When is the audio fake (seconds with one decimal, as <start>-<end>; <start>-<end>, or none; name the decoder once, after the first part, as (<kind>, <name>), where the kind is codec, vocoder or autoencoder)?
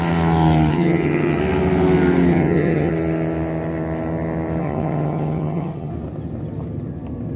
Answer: 0.7-1.4 (vocoder, HiFi-GAN); 2.3-2.9; 4.6-5.9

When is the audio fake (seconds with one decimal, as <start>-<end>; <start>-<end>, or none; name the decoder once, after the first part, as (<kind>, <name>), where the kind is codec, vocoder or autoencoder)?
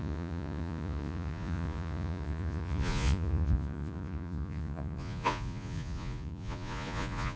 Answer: 0.0-7.4 (vocoder, Vocos)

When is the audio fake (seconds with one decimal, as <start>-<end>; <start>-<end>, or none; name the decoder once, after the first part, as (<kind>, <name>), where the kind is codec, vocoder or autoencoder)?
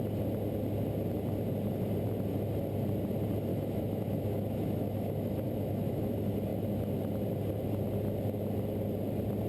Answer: 3.5-6.1 (autoencoder, DAC-VAE)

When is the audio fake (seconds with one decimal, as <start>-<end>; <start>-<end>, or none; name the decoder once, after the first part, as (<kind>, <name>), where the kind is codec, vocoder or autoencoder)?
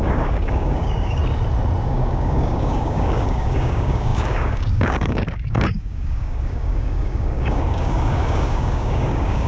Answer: 0.0-1.2 (codec, DAC); 1.8-9.5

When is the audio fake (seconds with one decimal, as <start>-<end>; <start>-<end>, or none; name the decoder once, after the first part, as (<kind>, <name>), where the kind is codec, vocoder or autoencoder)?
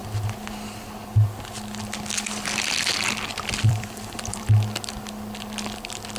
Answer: 3.3-4.4 (vocoder, BigVGAN v2)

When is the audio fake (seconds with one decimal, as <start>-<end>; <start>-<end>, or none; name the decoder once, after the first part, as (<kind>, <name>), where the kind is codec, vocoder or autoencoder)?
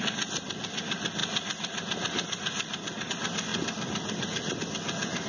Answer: none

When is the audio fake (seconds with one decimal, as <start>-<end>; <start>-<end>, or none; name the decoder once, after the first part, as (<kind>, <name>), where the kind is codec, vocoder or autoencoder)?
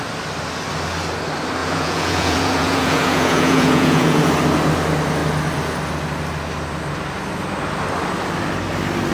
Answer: 1.6-4.2 (vocoder, Vocos)